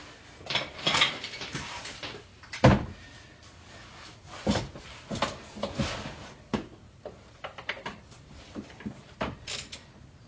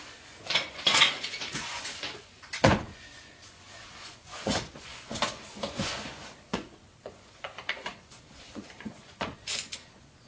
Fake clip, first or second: second